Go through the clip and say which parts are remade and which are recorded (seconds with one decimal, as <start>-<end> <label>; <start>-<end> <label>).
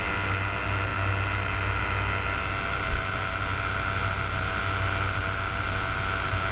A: 0.0-6.5 recorded